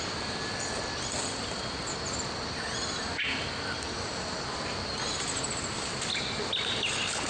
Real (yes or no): yes